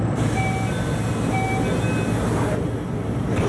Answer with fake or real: real